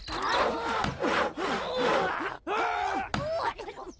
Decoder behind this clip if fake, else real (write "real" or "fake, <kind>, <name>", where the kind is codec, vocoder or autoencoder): real